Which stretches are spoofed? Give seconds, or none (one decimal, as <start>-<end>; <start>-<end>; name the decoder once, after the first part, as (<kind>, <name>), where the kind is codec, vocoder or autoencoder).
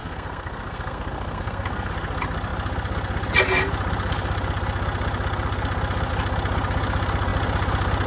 0.0-1.9 (codec, SNAC)